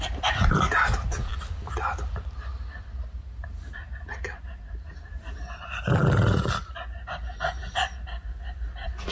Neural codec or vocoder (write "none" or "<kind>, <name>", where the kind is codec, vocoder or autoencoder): none